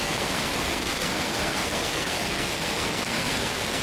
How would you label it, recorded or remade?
remade